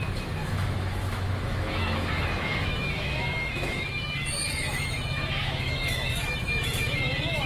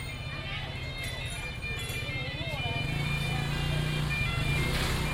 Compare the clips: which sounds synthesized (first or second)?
first